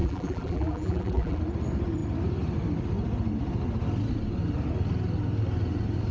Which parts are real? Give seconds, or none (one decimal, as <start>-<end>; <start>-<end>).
1.4-6.1